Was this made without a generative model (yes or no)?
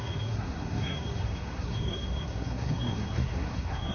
no